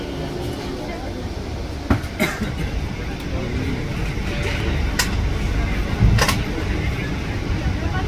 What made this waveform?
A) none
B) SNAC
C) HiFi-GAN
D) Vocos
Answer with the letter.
A